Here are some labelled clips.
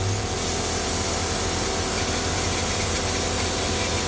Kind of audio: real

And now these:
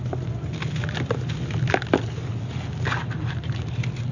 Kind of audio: real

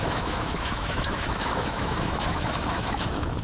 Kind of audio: fake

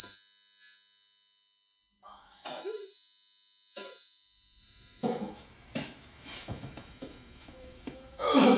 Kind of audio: fake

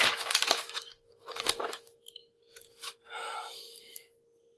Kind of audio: fake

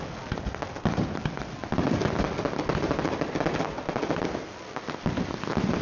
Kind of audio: real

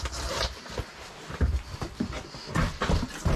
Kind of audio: real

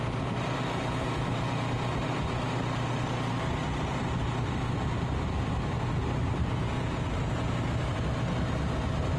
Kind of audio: real